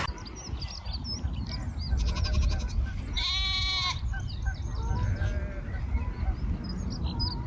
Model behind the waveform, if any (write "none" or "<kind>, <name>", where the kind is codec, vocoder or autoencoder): none